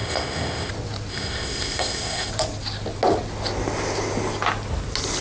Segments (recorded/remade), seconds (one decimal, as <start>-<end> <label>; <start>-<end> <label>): 0.0-0.7 remade; 0.7-1.1 recorded; 1.1-2.3 remade; 2.3-5.2 recorded